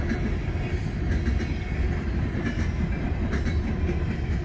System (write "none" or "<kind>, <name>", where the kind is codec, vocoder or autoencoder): none